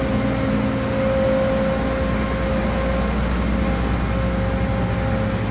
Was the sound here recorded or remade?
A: recorded